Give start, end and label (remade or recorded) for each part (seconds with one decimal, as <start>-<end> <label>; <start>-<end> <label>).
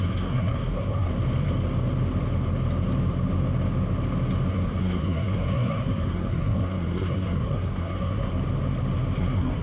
0.0-1.1 remade; 1.1-4.5 recorded; 4.5-8.3 remade; 8.3-9.2 recorded; 9.2-9.6 remade